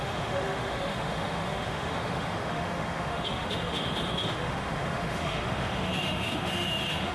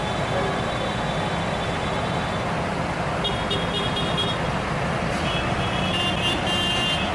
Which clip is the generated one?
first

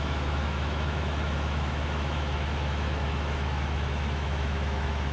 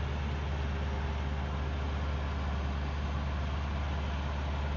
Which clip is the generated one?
first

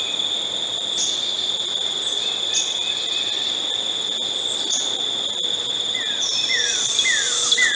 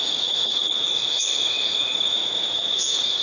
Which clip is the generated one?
second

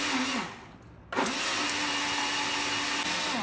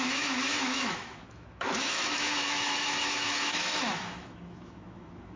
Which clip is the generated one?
second